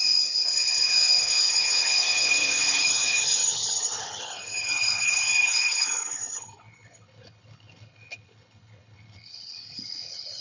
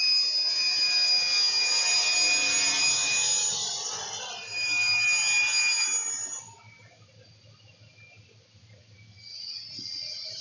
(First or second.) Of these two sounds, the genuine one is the second